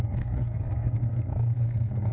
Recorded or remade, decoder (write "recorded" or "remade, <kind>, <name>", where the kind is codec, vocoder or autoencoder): remade, codec, SNAC